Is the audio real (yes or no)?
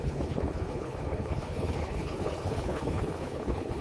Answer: no